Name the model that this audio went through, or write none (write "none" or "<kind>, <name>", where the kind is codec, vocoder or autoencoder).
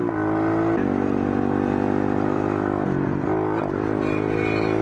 none